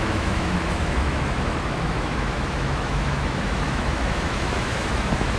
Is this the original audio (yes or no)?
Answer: no